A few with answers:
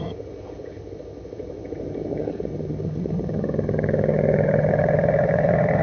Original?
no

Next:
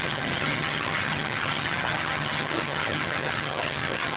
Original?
no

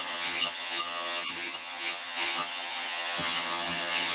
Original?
no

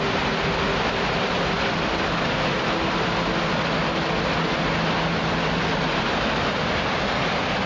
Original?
yes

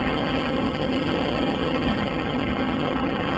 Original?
no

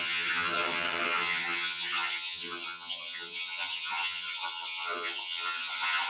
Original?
no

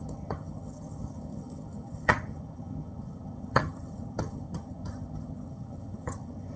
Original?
no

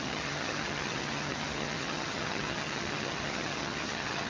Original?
no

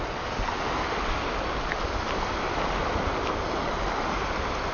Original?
yes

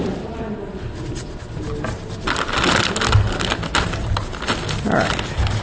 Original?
yes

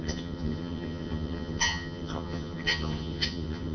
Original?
no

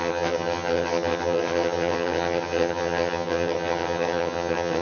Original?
no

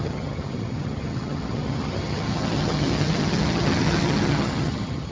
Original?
no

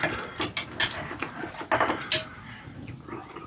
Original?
yes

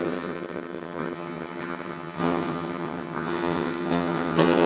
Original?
no